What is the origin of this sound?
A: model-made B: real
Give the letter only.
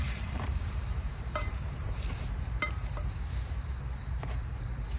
A